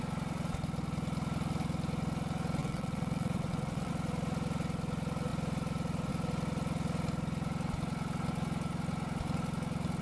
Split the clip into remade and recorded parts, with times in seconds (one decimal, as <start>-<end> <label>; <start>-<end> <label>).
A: 0.0-2.6 recorded; 2.6-3.9 remade; 3.9-10.0 recorded